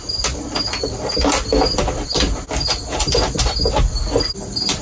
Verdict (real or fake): real